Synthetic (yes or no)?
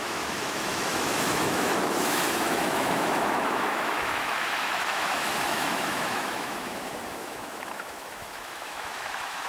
yes